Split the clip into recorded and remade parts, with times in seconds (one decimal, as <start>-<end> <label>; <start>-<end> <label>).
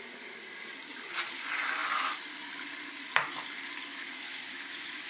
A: 0.0-3.9 recorded; 3.9-5.1 remade